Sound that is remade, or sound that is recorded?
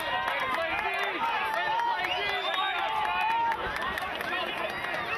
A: recorded